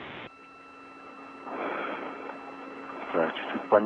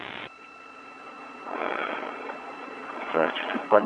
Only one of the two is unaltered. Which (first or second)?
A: first